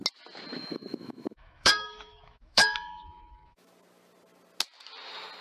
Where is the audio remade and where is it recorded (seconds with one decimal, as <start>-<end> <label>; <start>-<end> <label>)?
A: 0.0-0.5 recorded; 0.5-3.7 remade; 3.7-5.4 recorded